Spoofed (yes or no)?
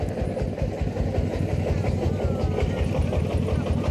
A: no